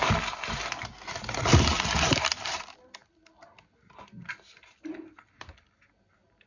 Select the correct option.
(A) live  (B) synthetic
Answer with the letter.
A